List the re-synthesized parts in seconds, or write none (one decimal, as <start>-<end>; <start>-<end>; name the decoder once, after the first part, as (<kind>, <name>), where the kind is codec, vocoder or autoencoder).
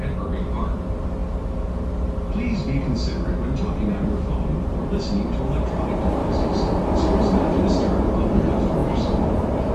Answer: 6.2-7.5 (vocoder, BigVGAN v2); 8.8-9.7